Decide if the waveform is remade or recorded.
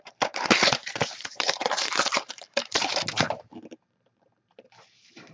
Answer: remade